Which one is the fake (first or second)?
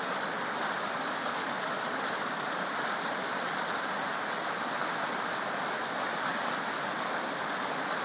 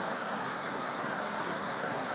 second